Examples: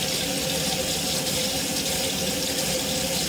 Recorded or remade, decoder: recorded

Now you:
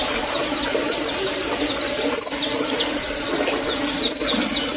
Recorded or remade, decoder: recorded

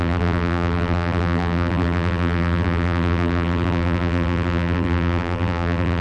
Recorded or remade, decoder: remade, vocoder, BigVGAN v2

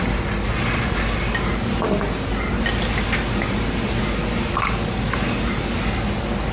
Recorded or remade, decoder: recorded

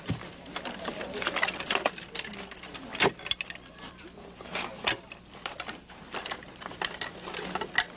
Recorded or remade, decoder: remade, vocoder, BigVGAN v2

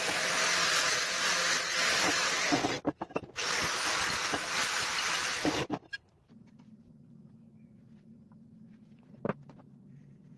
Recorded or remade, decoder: recorded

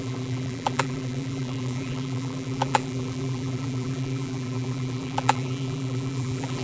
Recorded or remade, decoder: remade, vocoder, BigVGAN v2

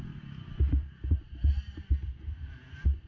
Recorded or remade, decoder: recorded